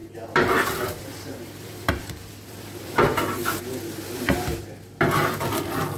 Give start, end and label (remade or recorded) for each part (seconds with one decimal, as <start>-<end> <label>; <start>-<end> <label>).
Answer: 0.0-3.6 remade; 3.6-6.0 recorded